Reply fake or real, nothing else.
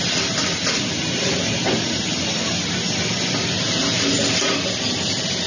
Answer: real